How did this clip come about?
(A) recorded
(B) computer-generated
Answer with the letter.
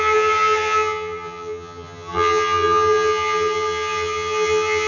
B